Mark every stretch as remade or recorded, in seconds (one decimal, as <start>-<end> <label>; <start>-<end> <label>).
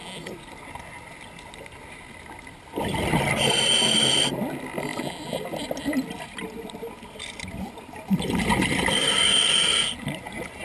0.0-10.6 recorded